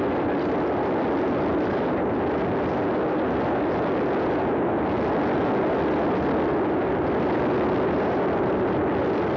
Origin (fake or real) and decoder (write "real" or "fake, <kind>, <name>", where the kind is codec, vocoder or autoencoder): real